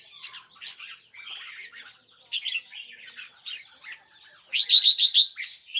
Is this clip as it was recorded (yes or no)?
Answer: yes